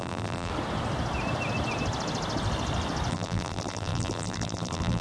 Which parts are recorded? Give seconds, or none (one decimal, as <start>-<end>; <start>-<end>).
0.5-3.1